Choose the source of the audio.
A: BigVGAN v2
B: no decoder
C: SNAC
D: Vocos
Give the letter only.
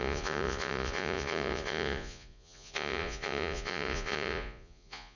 D